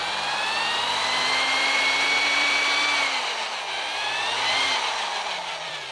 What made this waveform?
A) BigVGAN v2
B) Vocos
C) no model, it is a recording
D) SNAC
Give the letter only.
A